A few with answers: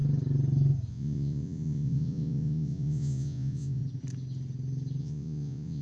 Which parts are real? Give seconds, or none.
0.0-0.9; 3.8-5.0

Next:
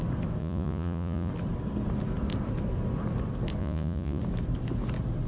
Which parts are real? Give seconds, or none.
0.0-0.4; 1.3-3.6; 4.2-5.3